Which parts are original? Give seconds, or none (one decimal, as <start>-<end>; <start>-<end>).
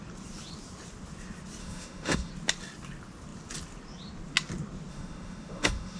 0.0-1.6; 2.3-4.9